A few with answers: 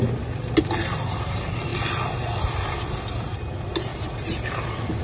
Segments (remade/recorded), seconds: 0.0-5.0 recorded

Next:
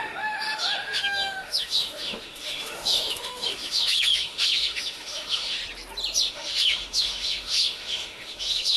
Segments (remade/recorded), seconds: 0.0-5.6 remade; 5.6-6.3 recorded; 6.3-8.8 remade

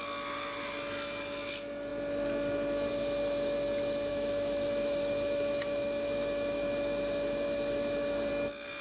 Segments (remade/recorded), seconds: 0.0-4.1 recorded; 4.1-8.3 remade; 8.3-8.8 recorded

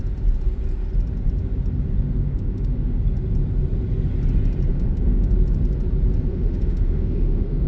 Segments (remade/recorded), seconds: 0.0-2.2 recorded; 2.2-3.0 remade; 3.0-4.7 recorded; 4.7-5.3 remade; 5.3-6.3 recorded; 6.3-7.7 remade

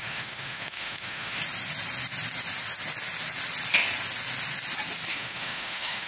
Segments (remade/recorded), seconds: 0.0-1.4 remade; 1.4-5.1 recorded; 5.1-6.1 remade

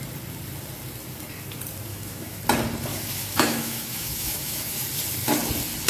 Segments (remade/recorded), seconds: 0.0-1.9 recorded; 1.9-2.4 remade; 2.4-2.9 recorded; 2.9-4.8 remade; 4.8-5.9 recorded